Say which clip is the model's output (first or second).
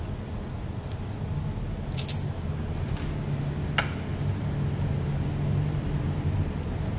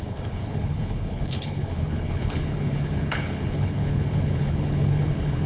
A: second